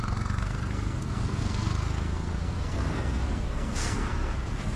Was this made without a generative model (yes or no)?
no